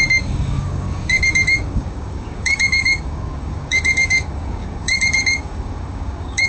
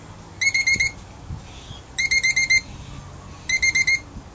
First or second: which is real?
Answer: second